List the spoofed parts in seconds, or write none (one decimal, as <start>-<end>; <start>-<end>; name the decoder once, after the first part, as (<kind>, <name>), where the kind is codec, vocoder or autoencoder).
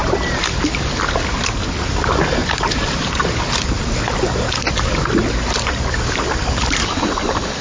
2.4-3.9 (vocoder, BigVGAN v2)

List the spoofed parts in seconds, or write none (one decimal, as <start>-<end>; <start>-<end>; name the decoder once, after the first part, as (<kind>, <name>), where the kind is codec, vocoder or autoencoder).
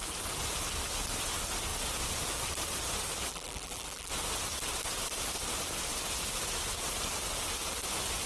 3.3-4.1 (vocoder, BigVGAN v2)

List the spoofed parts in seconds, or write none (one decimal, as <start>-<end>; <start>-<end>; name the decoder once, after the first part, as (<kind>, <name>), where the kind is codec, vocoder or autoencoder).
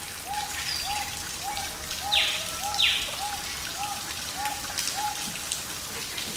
0.0-1.6 (vocoder, BigVGAN v2); 3.7-6.4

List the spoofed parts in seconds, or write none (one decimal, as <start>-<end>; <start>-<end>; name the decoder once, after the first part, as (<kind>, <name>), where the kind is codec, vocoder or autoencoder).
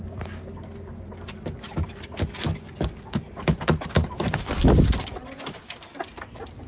none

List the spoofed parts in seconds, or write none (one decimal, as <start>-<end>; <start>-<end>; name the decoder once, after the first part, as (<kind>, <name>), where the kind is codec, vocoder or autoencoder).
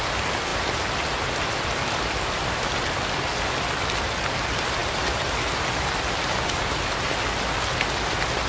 none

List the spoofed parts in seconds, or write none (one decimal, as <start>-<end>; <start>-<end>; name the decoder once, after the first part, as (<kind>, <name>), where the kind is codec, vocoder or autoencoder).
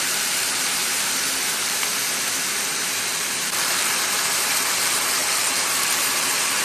0.0-6.6 (vocoder, BigVGAN v2)